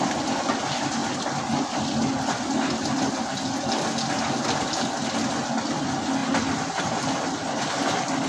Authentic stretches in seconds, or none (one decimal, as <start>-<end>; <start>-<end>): 0.0-8.3